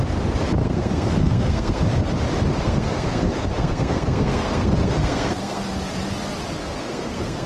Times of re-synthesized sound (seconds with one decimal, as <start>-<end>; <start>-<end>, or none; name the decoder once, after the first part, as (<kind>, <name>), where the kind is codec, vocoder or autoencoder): 0.6-1.8 (codec, SNAC); 2.6-5.6; 6.6-7.5